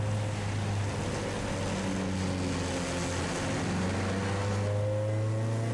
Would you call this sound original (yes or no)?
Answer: yes